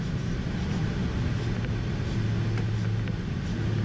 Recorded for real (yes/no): yes